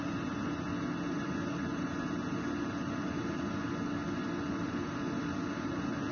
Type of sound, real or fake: real